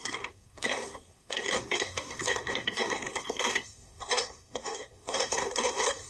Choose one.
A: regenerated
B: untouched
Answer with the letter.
A